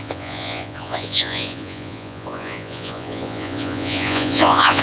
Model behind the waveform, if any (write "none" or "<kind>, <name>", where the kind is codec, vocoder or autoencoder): vocoder, Vocos